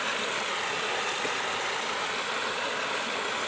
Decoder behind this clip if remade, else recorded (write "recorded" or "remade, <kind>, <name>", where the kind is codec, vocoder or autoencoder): recorded